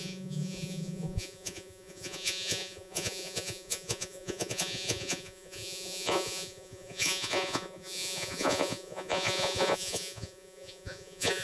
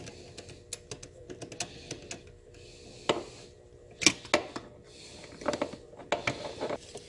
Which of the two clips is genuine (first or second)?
second